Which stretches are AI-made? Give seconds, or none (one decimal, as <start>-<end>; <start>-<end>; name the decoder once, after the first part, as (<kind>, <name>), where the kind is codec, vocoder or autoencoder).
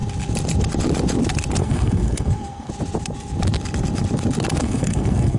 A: 1.6-2.7 (codec, SNAC); 4.6-5.4